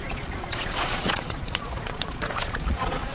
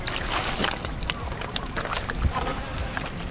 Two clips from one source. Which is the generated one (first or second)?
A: first